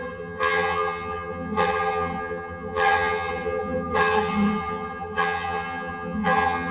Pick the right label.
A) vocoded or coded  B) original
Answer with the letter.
A